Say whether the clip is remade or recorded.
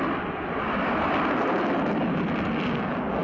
remade